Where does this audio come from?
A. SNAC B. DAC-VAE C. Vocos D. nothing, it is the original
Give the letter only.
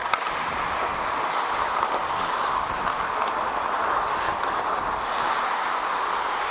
D